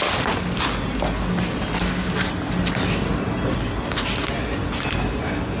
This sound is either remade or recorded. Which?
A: recorded